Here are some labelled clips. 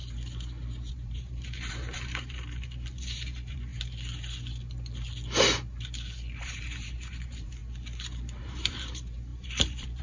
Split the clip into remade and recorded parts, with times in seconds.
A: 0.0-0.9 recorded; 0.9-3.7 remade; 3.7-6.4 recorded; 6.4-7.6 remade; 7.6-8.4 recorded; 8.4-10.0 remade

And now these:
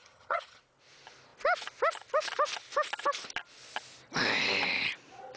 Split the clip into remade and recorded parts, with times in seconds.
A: 0.0-0.6 remade; 0.6-5.4 recorded